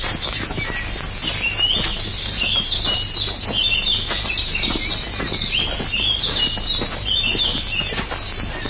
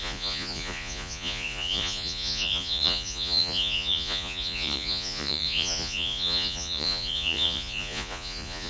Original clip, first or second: first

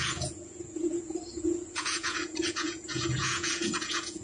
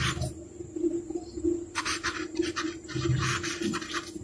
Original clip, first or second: second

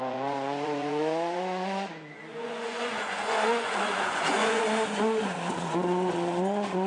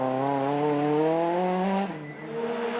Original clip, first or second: second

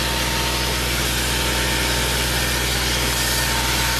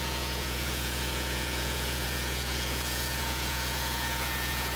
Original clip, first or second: first